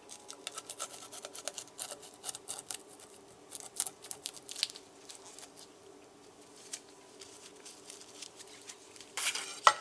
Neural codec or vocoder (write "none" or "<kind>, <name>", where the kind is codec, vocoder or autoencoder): none